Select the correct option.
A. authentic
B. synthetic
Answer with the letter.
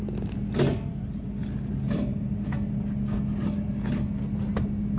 A